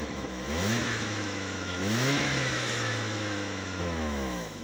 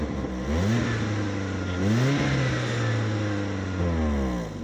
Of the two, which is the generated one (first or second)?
first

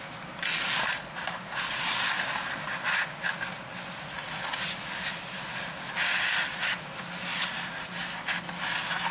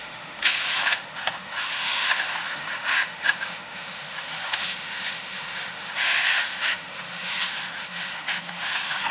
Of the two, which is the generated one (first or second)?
second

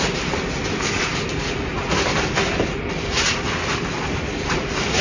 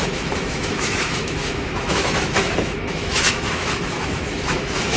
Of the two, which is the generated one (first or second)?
second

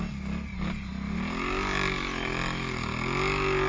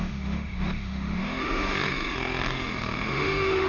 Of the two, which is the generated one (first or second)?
second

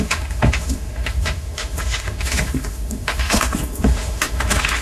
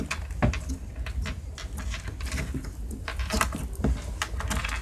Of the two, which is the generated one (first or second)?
first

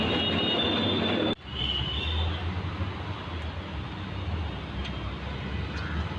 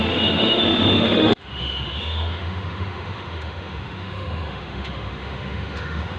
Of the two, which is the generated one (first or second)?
second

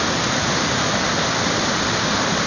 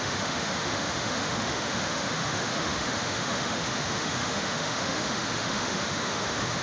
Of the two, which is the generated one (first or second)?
second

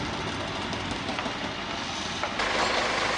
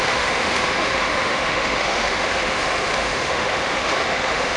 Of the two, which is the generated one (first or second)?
second